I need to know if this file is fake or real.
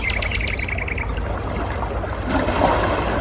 real